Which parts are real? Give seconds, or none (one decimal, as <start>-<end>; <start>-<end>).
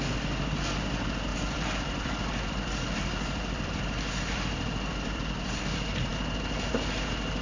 0.0-1.3; 5.6-7.4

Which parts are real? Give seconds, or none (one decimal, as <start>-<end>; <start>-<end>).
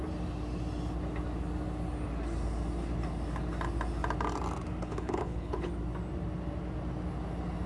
0.0-4.8; 5.7-7.7